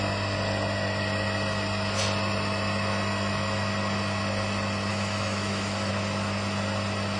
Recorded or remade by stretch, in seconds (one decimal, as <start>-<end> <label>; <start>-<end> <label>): 0.0-4.9 recorded; 4.9-5.9 remade; 5.9-7.2 recorded